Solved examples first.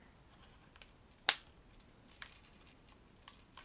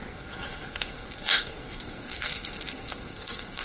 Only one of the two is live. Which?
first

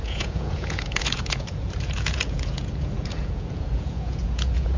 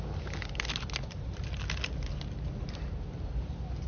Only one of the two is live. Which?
second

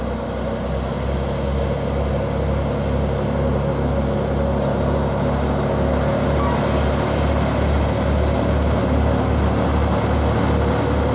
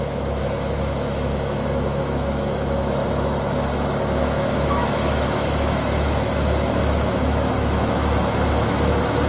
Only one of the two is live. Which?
first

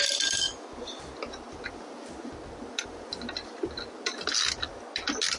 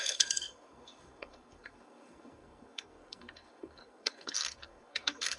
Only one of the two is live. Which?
first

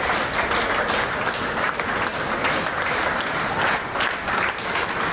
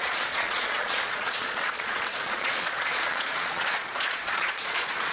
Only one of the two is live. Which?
first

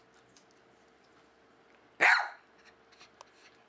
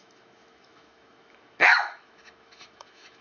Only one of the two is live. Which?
first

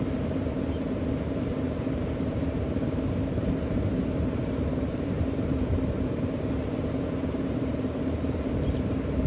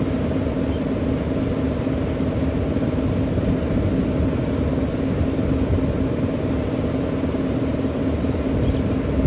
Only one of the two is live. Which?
second